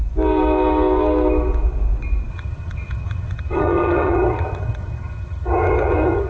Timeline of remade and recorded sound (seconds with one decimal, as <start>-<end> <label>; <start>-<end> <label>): 0.0-2.3 recorded; 2.3-6.3 remade